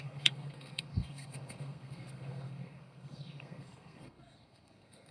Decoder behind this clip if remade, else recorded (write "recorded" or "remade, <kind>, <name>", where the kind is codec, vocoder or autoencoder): remade, codec, SNAC